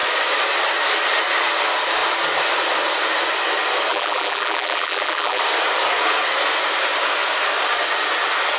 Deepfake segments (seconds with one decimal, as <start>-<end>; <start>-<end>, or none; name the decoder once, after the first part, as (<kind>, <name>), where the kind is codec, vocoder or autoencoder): 3.9-5.4 (vocoder, BigVGAN v2)